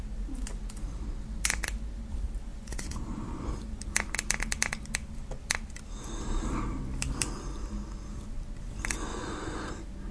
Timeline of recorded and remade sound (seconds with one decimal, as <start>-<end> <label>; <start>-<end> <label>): 0.0-2.5 recorded; 2.5-3.5 remade; 3.5-9.1 recorded; 9.1-9.7 remade; 9.7-10.1 recorded